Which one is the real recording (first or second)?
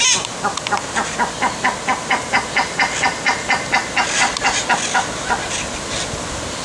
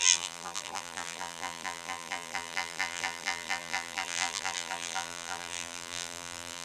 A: first